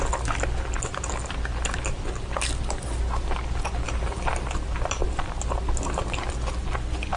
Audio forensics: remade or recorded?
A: recorded